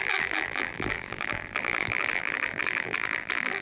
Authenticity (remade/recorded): remade